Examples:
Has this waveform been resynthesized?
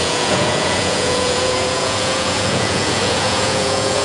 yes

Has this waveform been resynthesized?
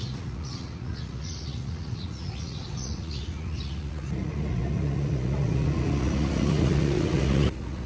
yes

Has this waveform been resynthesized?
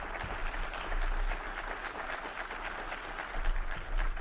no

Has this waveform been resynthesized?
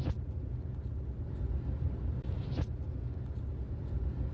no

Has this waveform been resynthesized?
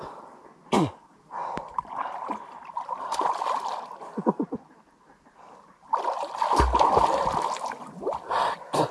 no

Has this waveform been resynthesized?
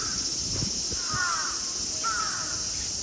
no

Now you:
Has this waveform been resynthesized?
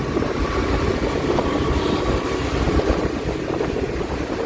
no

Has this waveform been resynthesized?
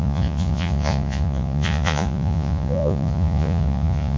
yes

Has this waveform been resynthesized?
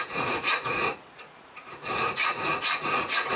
yes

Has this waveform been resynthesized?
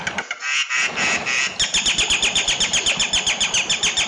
no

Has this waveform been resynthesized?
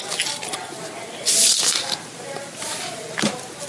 no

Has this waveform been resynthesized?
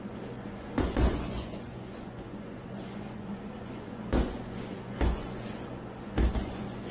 yes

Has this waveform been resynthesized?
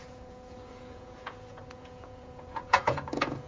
yes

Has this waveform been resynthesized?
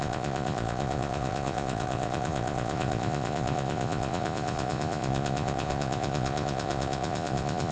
yes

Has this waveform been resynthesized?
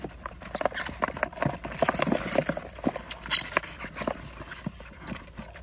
no